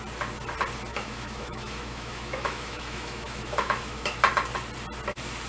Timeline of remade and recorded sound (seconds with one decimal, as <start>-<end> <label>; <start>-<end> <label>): 0.0-0.9 recorded; 0.9-4.2 remade; 4.2-5.5 recorded